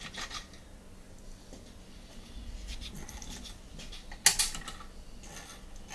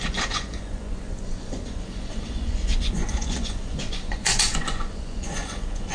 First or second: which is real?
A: first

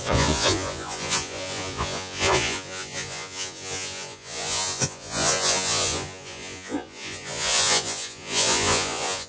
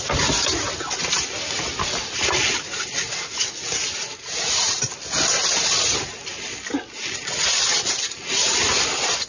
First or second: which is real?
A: second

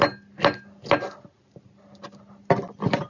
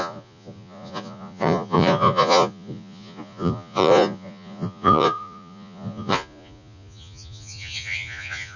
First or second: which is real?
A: first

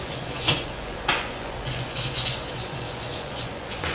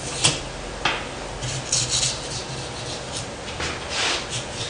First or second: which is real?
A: second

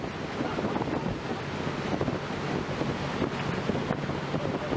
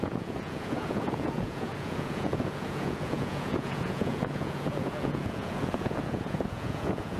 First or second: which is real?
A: first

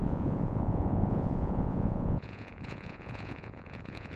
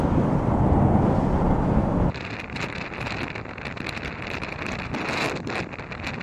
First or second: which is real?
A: second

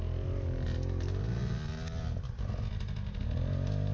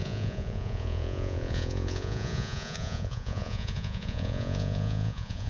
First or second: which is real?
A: first